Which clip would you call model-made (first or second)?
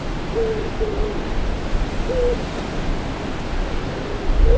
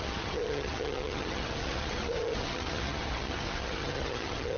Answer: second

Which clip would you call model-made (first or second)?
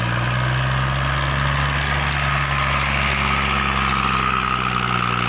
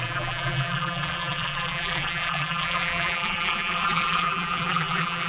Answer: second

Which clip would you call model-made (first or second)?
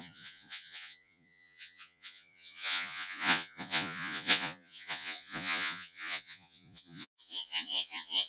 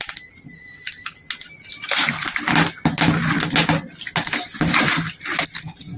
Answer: first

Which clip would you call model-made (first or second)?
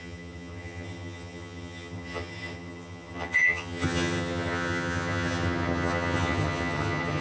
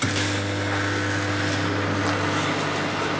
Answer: first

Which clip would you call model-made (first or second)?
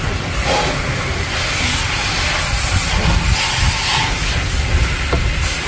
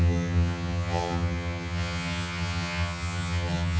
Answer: second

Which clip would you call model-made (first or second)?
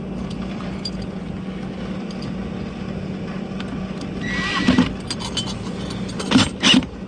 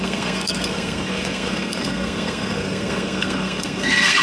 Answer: second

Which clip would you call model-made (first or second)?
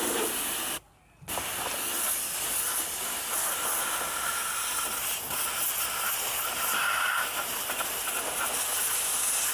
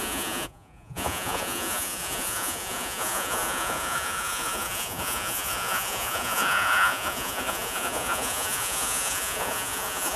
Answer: second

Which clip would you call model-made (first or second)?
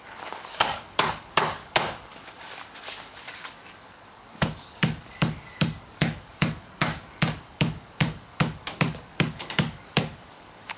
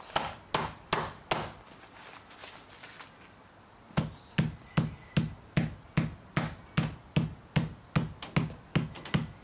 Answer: first